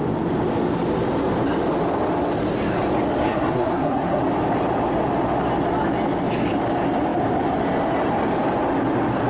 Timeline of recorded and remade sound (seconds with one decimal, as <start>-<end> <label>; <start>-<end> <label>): 0.0-3.2 recorded; 3.2-4.2 remade; 4.2-9.3 recorded

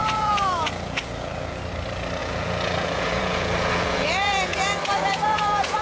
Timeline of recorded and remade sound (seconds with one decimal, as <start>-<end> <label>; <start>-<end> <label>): 0.0-1.6 remade; 1.6-2.2 recorded; 2.2-5.8 remade

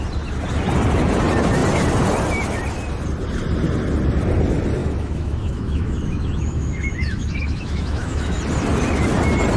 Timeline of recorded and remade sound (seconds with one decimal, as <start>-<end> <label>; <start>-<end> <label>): 0.0-4.8 recorded; 4.8-8.4 remade; 8.4-9.6 recorded